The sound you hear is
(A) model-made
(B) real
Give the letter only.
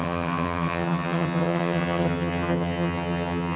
A